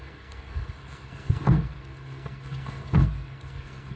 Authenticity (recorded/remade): remade